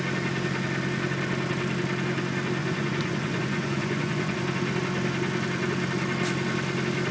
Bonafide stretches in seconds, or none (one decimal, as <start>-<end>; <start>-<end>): 0.0-2.6; 4.4-7.1